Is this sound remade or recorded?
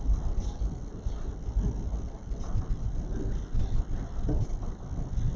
recorded